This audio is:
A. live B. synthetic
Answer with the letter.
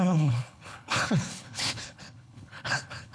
B